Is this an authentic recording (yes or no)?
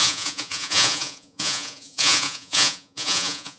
no